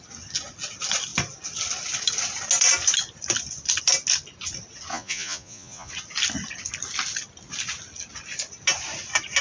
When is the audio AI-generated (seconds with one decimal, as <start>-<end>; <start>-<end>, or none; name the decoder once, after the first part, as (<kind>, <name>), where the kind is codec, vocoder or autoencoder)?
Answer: 4.9-5.9 (vocoder, Vocos)